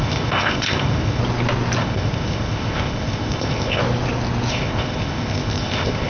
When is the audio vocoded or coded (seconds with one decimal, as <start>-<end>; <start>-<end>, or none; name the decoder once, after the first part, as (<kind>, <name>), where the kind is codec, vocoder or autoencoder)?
0.0-1.2 (codec, ZipCodec); 1.8-3.8; 4.5-6.1